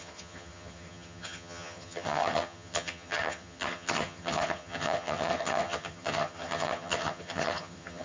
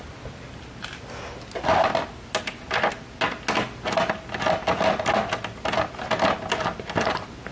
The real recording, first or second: second